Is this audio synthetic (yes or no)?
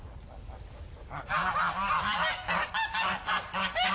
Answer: no